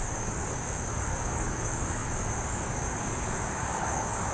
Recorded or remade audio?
remade